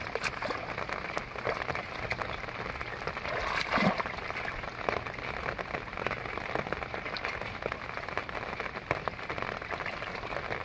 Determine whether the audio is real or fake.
real